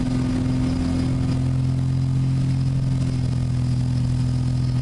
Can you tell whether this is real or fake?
real